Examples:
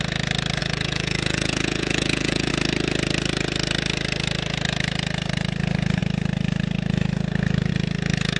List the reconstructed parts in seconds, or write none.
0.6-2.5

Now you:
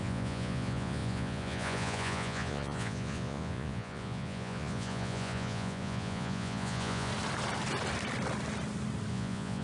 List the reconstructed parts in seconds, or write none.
0.0-7.1; 9.1-9.6

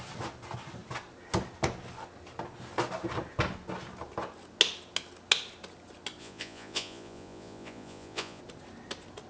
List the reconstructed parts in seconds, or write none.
6.2-8.4

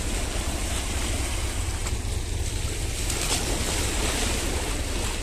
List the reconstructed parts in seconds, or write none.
none

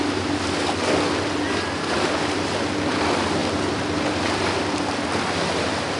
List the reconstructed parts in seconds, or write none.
none

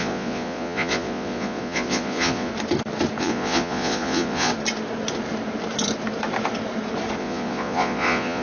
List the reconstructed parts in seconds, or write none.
0.0-2.5; 3.2-4.5; 7.2-8.4

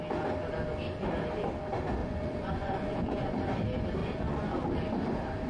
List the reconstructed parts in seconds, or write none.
2.0-3.3; 4.0-4.5